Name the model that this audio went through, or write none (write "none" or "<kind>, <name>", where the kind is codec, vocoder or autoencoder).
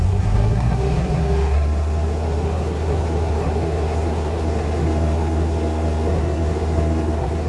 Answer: codec, SNAC